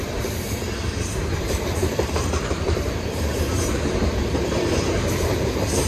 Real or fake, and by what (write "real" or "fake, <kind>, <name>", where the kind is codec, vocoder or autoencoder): fake, vocoder, BigVGAN v2